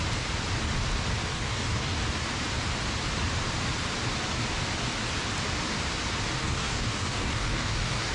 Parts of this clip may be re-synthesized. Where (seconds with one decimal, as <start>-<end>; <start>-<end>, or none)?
1.3-2.0; 6.4-8.1